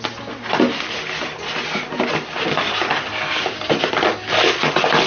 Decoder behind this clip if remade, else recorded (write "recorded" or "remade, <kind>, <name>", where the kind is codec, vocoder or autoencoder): recorded